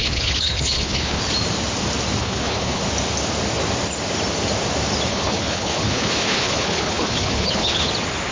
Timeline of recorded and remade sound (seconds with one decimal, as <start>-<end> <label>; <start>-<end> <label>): 0.0-1.2 remade; 1.2-2.2 recorded; 2.2-2.8 remade; 2.8-5.1 recorded; 5.1-7.9 remade; 7.9-8.3 recorded